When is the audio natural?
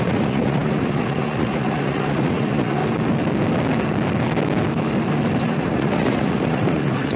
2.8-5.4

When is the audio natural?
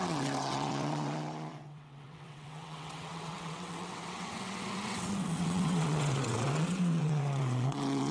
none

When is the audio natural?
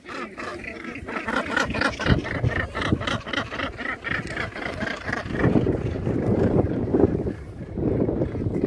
0.0-3.6; 7.9-8.7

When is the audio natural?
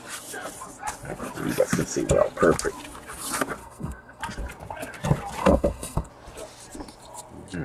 0.0-3.6; 4.2-5.4; 6.1-7.6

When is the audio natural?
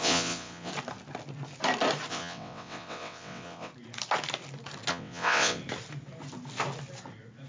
0.7-2.1; 3.7-4.9; 5.6-7.5